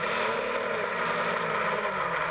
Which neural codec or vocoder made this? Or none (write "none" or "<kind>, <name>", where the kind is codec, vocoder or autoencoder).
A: none